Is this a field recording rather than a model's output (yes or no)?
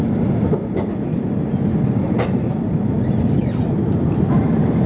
yes